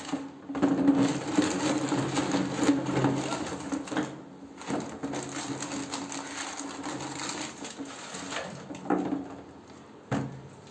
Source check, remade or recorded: recorded